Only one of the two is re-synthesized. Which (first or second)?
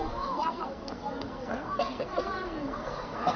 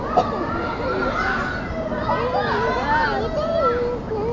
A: first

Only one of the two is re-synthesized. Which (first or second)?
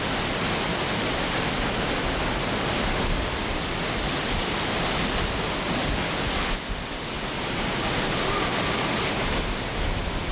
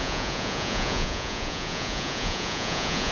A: second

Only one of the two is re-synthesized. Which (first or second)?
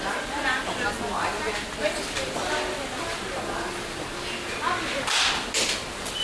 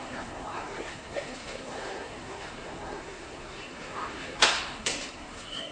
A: second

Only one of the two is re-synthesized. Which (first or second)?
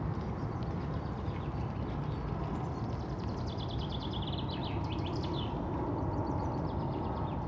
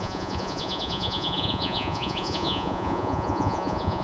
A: second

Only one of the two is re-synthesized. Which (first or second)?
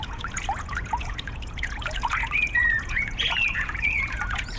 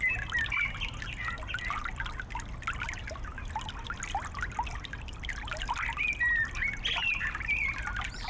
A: first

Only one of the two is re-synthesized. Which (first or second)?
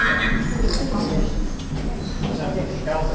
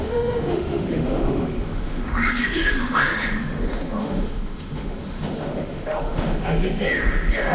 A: second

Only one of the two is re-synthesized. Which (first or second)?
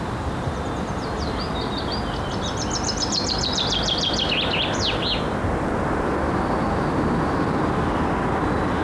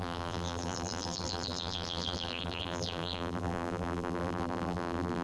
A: second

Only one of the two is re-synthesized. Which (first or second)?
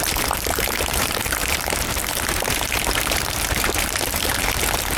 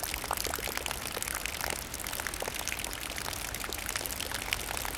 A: first